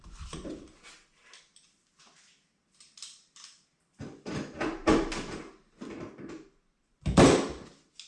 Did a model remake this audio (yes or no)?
no